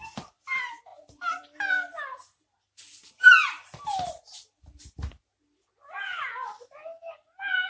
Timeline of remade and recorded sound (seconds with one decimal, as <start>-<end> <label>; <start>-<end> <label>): 0.0-7.7 recorded